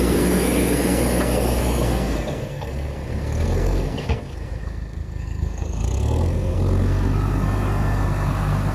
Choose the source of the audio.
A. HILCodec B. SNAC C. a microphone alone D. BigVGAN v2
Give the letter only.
B